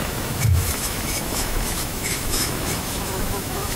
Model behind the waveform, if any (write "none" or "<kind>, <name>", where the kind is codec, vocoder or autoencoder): autoencoder, DAC-VAE